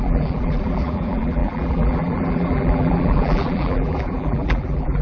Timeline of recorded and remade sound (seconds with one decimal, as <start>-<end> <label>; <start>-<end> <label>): 0.0-5.0 remade